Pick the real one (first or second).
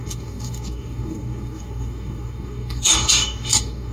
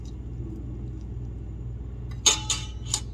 second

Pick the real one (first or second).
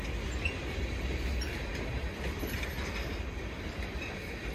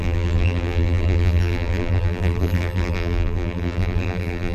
first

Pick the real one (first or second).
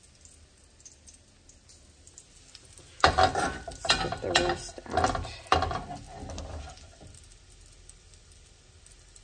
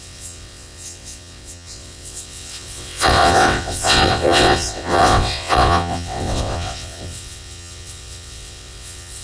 first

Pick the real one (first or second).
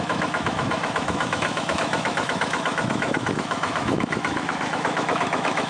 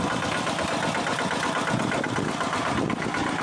second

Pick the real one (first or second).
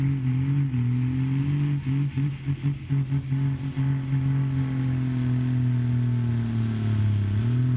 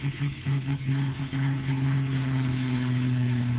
first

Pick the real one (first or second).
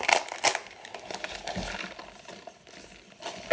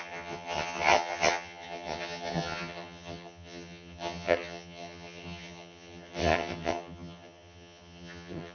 first